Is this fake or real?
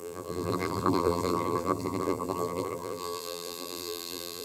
fake